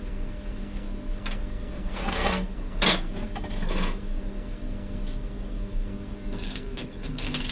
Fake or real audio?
fake